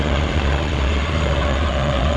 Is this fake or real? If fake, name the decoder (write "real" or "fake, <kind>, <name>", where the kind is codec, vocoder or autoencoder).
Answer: fake, vocoder, Vocos